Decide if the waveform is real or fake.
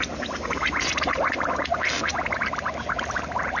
real